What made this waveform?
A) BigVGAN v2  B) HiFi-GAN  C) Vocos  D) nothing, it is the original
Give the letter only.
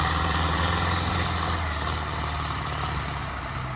A